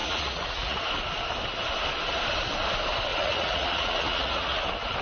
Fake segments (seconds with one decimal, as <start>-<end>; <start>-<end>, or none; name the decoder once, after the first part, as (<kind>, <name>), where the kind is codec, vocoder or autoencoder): 0.0-0.8 (vocoder, Vocos); 3.1-4.6